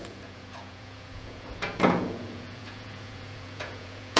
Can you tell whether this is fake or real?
fake